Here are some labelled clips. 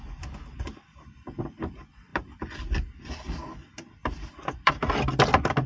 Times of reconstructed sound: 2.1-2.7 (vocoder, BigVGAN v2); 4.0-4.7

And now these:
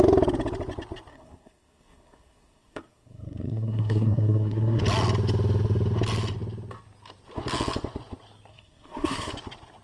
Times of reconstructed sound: 1.1-4.8 (codec, SNAC); 8.5-9.3

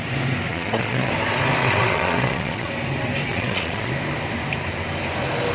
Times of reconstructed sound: 0.5-1.1 (vocoder, Vocos); 1.6-2.7; 3.3-3.9

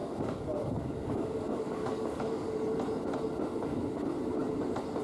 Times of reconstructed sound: 0.0-2.5 (codec, DAC)

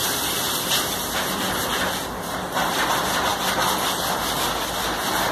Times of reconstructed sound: none